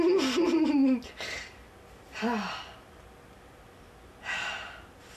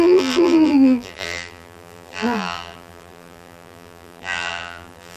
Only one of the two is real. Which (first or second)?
first